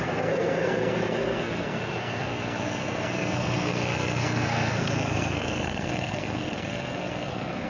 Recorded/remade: remade